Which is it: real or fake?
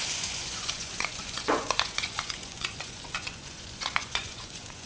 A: fake